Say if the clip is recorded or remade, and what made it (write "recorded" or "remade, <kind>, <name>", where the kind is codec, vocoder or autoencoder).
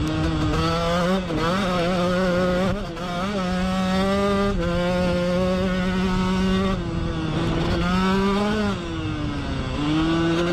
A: recorded